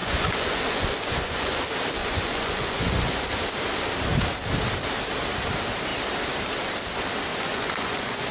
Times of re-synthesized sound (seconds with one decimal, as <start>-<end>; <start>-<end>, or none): 0.0-1.6; 2.0-3.2; 7.3-8.3